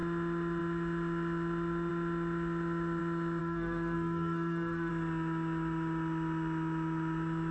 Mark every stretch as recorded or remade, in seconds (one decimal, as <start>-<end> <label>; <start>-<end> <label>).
0.0-3.4 recorded; 3.4-4.9 remade; 4.9-7.5 recorded